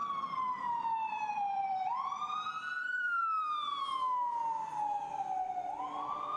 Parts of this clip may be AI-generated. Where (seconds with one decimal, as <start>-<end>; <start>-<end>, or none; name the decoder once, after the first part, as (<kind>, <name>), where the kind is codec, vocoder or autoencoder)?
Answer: 1.0-3.8 (vocoder, BigVGAN v2)